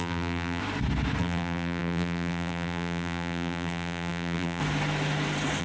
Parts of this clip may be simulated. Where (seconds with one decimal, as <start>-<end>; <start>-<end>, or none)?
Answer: 0.0-0.6; 1.2-4.6